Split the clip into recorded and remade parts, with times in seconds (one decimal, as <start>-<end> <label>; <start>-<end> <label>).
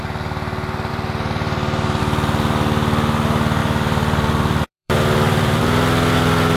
0.0-0.9 recorded; 0.9-2.0 remade; 2.0-3.6 recorded; 3.6-5.6 remade; 5.6-6.6 recorded